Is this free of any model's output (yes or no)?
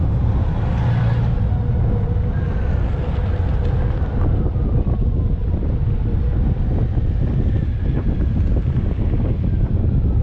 yes